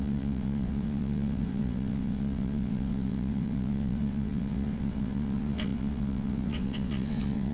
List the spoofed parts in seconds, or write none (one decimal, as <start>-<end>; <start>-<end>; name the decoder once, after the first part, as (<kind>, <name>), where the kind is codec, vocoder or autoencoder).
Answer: 0.0-7.5 (vocoder, WaveNeXt)